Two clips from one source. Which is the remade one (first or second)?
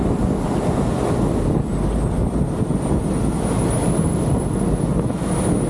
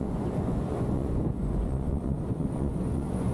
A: second